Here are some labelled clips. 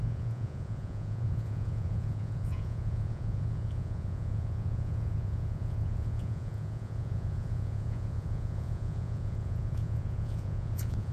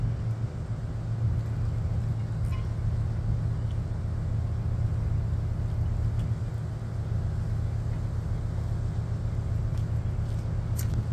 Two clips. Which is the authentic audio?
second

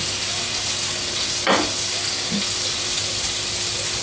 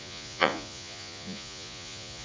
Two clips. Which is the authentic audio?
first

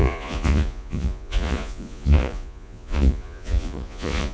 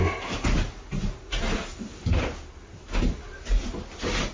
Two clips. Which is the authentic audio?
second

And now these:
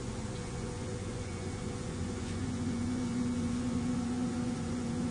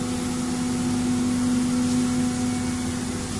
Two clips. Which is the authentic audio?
second